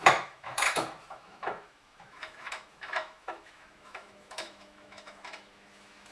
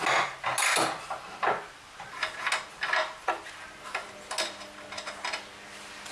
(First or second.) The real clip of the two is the second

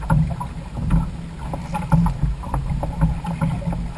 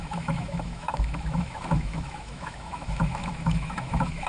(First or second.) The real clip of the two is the first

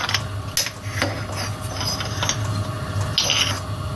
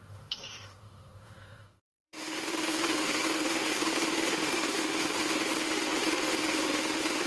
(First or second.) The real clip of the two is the first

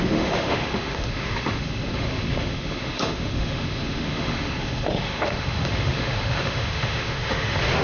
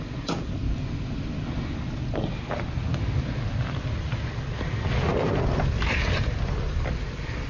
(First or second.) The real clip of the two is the second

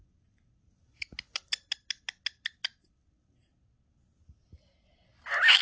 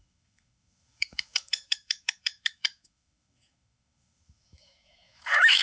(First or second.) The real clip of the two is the first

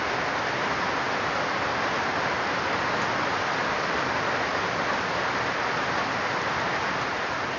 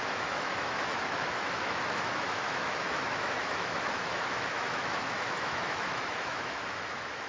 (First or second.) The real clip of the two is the first